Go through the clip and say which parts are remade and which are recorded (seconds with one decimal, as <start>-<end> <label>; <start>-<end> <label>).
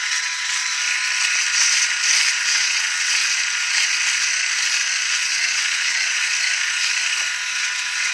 0.0-0.6 remade; 0.6-2.4 recorded; 2.4-3.2 remade; 3.2-5.1 recorded; 5.1-6.3 remade; 6.3-7.5 recorded; 7.5-8.1 remade